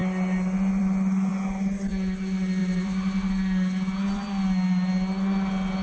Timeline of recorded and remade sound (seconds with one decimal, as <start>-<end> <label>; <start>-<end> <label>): 0.0-2.6 recorded; 2.6-3.3 remade; 3.3-5.8 recorded